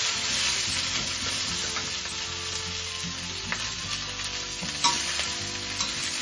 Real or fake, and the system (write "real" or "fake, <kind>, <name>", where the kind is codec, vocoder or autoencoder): real